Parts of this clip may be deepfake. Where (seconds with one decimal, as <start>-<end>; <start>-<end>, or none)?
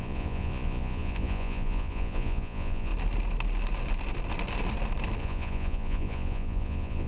0.0-2.9; 5.2-7.1